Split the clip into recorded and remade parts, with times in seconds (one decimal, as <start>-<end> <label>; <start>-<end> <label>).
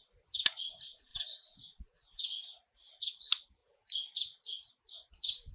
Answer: 0.0-1.1 recorded; 1.1-3.2 remade; 3.2-3.6 recorded; 3.6-4.7 remade; 4.7-5.5 recorded